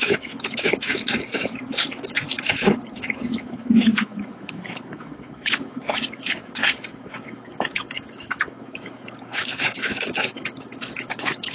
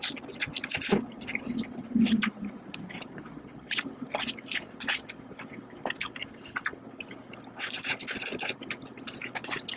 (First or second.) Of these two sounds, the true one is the second